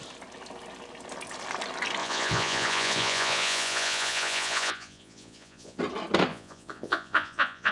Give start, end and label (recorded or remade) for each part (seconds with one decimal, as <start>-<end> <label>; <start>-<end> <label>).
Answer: 0.0-2.0 recorded; 2.0-5.8 remade; 5.8-6.3 recorded; 6.3-7.7 remade